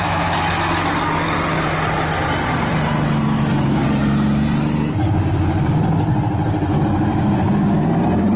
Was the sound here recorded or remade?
recorded